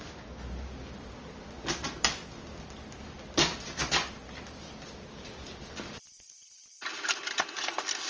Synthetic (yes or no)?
no